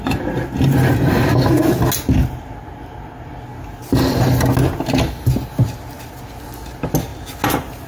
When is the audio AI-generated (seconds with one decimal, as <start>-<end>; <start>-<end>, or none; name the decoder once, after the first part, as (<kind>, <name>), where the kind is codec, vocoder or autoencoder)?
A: none